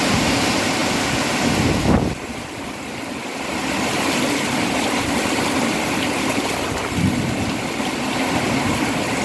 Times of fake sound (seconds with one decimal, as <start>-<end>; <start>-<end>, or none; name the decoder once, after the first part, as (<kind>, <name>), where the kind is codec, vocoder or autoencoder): none